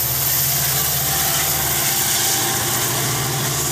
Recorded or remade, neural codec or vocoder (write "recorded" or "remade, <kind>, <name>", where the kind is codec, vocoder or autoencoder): recorded